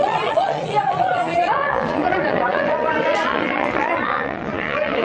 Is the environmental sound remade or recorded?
remade